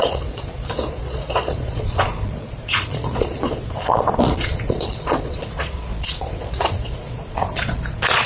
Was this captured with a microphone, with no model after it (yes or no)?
no